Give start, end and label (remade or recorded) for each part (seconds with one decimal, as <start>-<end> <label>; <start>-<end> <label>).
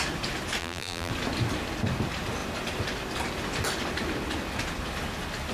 0.0-0.6 recorded; 0.6-1.1 remade; 1.1-5.5 recorded